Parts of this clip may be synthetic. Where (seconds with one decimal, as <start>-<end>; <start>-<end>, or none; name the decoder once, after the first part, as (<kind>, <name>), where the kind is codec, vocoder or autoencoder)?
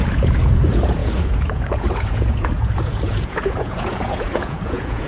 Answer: 0.0-5.1 (vocoder, Vocos)